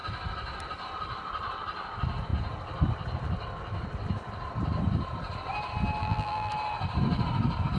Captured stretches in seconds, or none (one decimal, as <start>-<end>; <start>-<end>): 0.0-6.0; 6.5-7.8

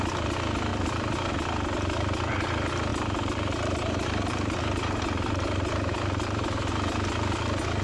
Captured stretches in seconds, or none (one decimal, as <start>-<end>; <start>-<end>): 0.0-0.7; 1.3-2.9; 6.7-7.8

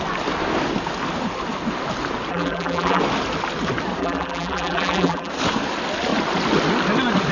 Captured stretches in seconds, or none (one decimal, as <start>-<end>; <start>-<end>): 0.0-2.3; 3.0-4.0; 5.3-7.3